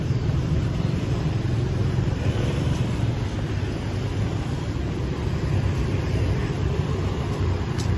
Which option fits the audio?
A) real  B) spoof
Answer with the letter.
B